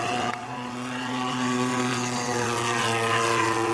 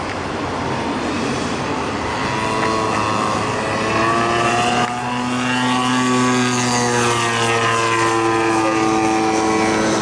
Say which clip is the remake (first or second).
first